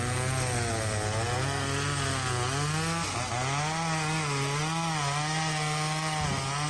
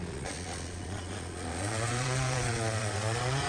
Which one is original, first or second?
first